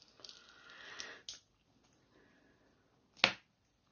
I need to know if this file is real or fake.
real